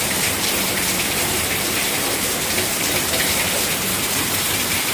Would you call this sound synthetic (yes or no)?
yes